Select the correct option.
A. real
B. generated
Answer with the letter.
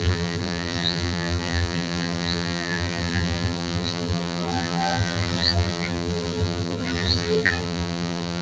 B